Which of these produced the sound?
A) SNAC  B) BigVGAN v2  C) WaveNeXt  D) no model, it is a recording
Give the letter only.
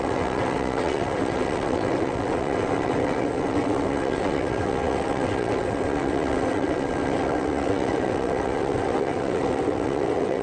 C